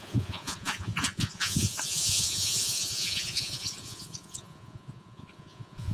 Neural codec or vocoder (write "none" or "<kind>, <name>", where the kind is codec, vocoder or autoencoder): vocoder, Vocos